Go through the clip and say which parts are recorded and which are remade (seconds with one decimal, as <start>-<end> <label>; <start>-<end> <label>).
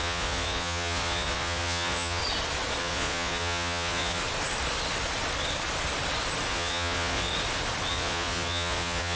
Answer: 0.0-2.2 remade; 2.2-2.8 recorded; 2.8-4.2 remade; 4.2-6.5 recorded; 6.5-7.3 remade; 7.3-7.9 recorded; 7.9-9.2 remade